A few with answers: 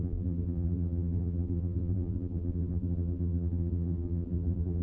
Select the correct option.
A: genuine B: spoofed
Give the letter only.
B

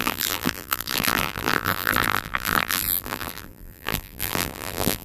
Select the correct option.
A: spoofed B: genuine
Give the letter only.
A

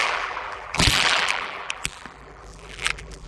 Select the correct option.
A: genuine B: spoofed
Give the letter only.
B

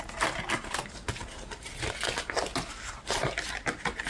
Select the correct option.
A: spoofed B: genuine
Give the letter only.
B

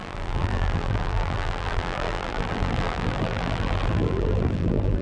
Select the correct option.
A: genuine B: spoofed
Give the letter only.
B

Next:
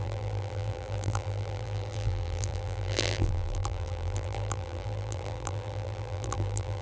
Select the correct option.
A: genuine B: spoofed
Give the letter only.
B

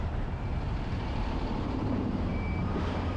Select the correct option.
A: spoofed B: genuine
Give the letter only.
A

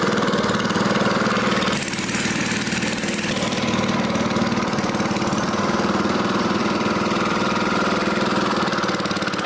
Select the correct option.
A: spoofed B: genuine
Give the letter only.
A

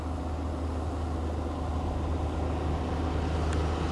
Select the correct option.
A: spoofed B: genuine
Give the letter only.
B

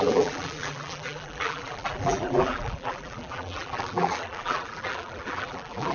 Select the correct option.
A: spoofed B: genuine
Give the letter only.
A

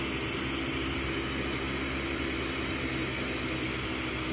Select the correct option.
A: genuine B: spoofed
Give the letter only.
A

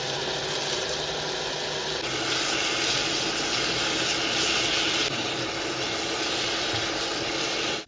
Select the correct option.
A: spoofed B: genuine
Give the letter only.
B